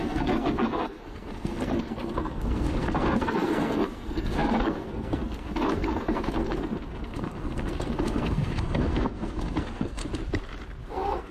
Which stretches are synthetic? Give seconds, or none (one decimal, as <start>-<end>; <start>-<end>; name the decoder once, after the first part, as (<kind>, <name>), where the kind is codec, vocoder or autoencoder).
0.0-10.0 (codec, SNAC); 10.9-11.3